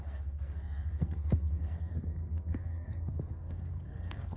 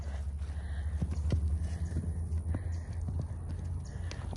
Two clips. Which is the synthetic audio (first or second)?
first